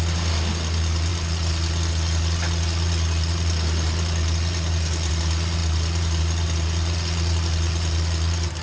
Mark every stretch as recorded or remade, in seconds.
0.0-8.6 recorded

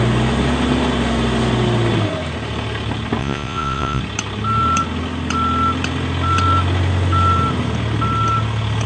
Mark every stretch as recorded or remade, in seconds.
0.0-3.2 recorded; 3.2-4.0 remade; 4.0-8.9 recorded

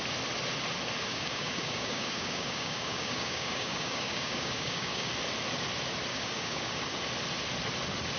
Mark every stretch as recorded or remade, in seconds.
0.0-1.1 recorded; 1.1-5.1 remade; 5.1-6.1 recorded; 6.1-6.8 remade; 6.8-8.2 recorded

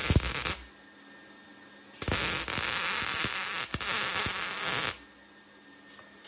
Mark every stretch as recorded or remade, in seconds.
0.0-6.3 recorded

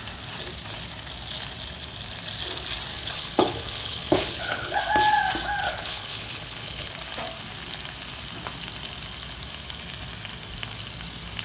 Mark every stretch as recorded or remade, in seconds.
0.0-2.9 recorded; 2.9-4.8 remade; 4.8-5.6 recorded; 5.6-6.9 remade; 6.9-11.4 recorded

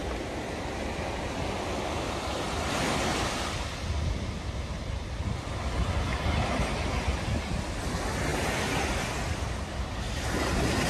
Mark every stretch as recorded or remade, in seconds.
0.0-10.9 recorded

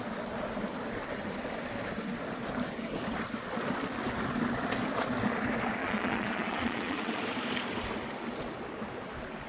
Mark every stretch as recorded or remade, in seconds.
0.0-5.8 recorded; 5.8-7.2 remade; 7.2-9.5 recorded

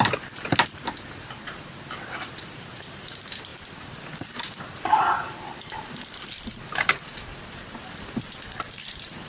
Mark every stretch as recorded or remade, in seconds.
0.0-9.3 recorded